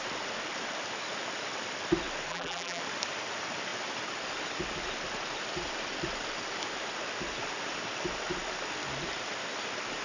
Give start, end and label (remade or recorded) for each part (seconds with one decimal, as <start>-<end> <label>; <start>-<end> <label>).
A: 0.0-2.3 recorded; 2.3-2.8 remade; 2.8-10.0 recorded